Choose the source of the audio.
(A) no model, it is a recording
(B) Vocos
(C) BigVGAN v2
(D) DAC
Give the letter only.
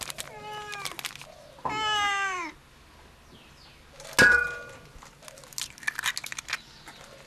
A